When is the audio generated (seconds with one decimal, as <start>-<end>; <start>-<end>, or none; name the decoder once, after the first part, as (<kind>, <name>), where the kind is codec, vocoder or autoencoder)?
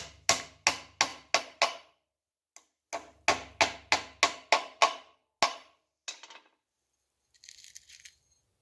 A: none